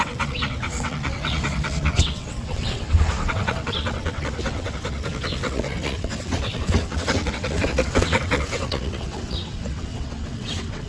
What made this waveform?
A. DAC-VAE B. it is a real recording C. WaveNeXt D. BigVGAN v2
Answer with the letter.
C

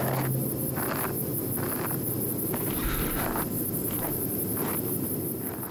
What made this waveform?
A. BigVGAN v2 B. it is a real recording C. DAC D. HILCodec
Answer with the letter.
B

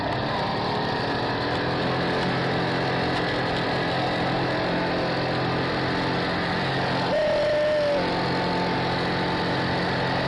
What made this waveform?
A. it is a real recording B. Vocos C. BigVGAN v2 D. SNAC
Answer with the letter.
A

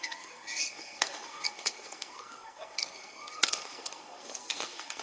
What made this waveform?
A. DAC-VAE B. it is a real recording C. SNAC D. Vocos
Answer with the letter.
C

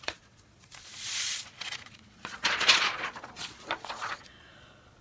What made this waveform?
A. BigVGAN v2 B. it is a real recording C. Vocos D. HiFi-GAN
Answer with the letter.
C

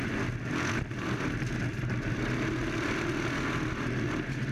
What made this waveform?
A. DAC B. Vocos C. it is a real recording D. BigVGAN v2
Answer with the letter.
C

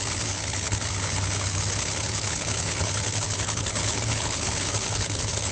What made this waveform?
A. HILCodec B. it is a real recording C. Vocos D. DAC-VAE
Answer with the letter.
A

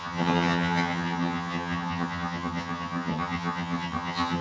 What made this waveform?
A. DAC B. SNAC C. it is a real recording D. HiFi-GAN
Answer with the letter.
D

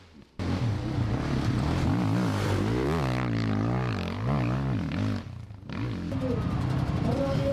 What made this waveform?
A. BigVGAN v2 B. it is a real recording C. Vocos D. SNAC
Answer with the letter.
B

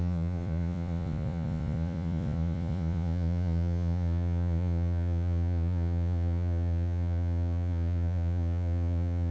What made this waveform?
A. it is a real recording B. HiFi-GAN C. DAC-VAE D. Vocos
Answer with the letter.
D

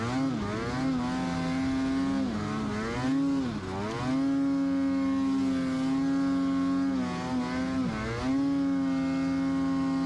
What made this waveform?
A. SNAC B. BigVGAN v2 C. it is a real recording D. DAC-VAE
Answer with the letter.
C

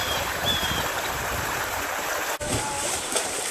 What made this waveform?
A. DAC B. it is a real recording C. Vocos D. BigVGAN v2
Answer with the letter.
D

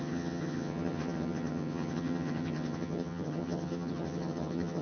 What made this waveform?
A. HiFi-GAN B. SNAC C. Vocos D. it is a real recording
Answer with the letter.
A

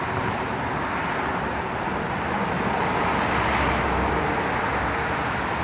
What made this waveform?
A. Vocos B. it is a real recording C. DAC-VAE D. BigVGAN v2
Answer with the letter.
B